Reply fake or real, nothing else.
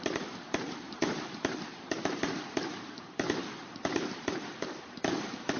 fake